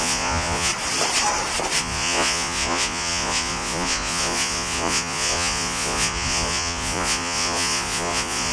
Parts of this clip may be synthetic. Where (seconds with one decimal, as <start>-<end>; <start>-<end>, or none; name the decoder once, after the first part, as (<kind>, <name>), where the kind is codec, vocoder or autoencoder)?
0.0-0.7 (vocoder, Vocos); 1.8-8.5